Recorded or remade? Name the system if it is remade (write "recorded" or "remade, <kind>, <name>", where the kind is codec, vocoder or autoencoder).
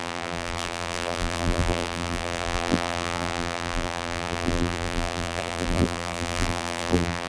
remade, vocoder, BigVGAN v2